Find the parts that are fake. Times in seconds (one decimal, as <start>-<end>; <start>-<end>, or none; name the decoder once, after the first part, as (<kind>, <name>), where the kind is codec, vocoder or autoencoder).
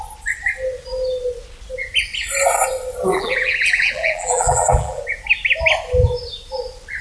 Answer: 3.1-5.0 (vocoder, BigVGAN v2)